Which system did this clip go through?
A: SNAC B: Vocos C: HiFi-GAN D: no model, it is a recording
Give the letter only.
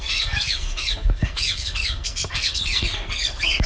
A